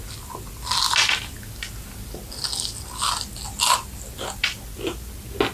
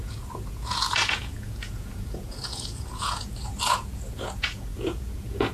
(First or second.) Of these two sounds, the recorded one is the first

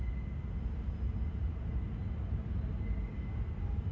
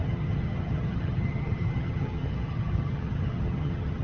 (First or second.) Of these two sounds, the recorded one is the first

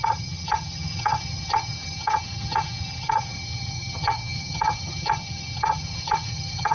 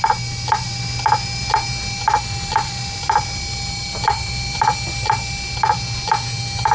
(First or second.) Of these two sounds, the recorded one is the second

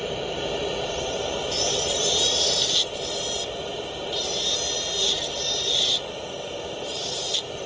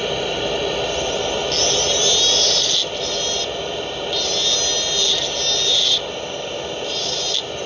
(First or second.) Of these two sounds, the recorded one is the second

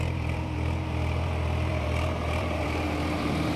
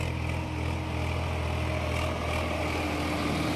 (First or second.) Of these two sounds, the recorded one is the second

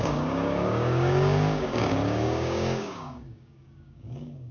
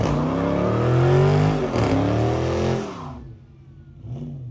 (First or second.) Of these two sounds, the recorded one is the second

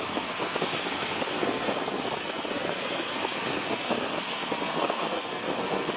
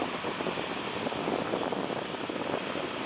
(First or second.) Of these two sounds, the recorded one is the second